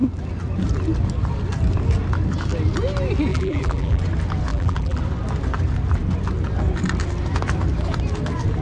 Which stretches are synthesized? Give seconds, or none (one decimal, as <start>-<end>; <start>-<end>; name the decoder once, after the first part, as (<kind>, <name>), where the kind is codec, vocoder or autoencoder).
3.3-4.0 (vocoder, BigVGAN v2); 4.5-5.0